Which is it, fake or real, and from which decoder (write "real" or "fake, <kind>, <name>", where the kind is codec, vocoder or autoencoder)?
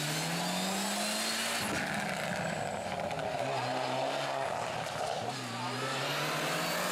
real